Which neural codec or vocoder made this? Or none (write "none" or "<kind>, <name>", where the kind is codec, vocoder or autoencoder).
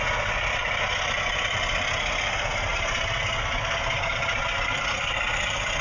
none